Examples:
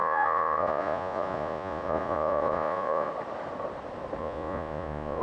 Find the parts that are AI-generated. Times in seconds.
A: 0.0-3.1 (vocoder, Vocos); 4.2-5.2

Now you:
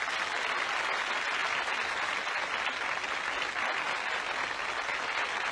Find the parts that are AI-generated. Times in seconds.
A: none

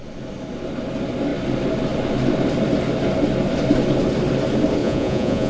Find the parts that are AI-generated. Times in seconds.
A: 4.8-5.5 (vocoder, Vocos)

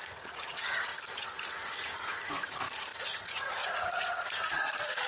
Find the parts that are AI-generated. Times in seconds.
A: 0.0-0.9 (vocoder, Vocos); 1.8-5.1

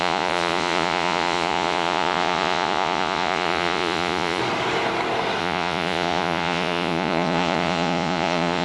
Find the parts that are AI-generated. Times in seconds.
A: 0.0-4.4 (vocoder, Vocos); 5.4-8.6

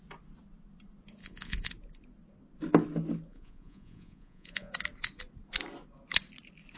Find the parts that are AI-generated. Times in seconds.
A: 1.2-1.7 (vocoder, Vocos); 3.3-4.7

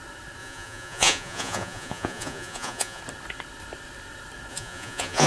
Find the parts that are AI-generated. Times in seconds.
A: 0.4-3.0 (vocoder, Vocos); 4.5-5.3